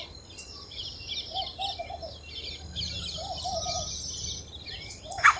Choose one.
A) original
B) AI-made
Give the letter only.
A